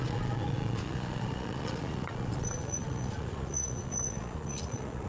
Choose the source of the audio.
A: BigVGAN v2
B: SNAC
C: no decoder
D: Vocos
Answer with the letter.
D